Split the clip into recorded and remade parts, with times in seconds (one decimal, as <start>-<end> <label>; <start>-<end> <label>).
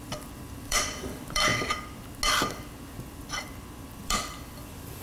0.0-1.5 remade; 1.5-3.0 recorded; 3.0-5.0 remade